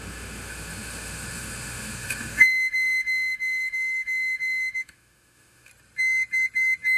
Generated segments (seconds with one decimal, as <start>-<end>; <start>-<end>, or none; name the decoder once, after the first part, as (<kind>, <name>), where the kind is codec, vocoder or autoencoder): 0.0-5.7 (autoencoder, DAC-VAE)